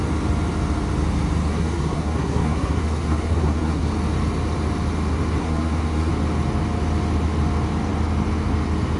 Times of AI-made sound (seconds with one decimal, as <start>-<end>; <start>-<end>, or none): 1.5-3.9; 5.4-6.1